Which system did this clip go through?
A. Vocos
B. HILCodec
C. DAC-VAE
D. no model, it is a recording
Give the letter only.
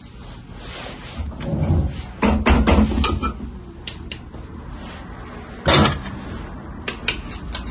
D